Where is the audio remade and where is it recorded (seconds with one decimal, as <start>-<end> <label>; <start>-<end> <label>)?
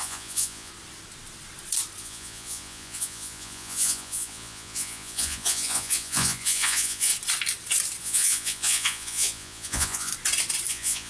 0.0-0.7 remade; 0.7-2.0 recorded; 2.0-7.1 remade; 7.1-8.0 recorded; 8.0-10.1 remade; 10.1-10.7 recorded; 10.7-11.1 remade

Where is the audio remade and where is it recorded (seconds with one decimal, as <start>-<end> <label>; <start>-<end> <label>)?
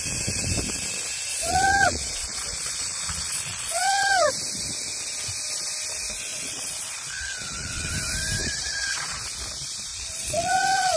0.0-1.3 recorded; 1.3-4.3 remade; 4.3-6.3 recorded; 6.3-7.9 remade; 7.9-8.4 recorded; 8.4-9.2 remade; 9.2-9.9 recorded; 9.9-11.0 remade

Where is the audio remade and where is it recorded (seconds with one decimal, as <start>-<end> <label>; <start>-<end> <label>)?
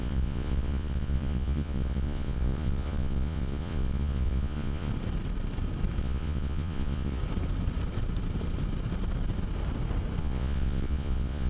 0.0-4.9 remade; 4.9-6.0 recorded; 6.0-7.2 remade; 7.2-10.2 recorded; 10.2-11.5 remade